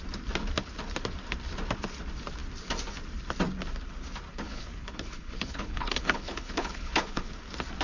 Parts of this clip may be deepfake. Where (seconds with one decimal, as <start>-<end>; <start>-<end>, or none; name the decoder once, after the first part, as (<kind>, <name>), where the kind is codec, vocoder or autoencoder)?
4.3-7.3 (codec, HILCodec)